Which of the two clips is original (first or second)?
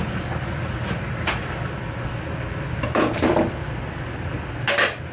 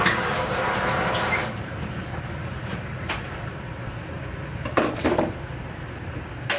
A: first